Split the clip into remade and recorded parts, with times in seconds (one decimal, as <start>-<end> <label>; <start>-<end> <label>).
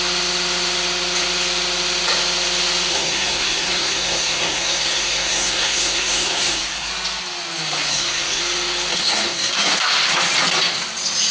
0.0-2.9 recorded; 2.9-6.9 remade; 6.9-7.9 recorded; 7.9-8.4 remade; 8.4-8.9 recorded; 8.9-9.7 remade; 9.7-11.3 recorded